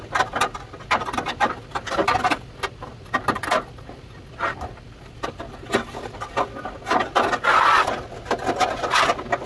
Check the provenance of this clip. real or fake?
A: real